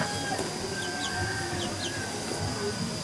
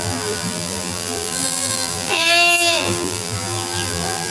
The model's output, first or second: second